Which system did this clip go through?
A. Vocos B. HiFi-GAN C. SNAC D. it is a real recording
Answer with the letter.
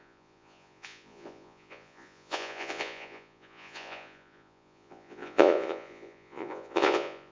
A